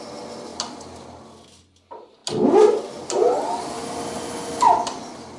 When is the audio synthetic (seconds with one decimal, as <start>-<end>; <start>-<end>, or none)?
none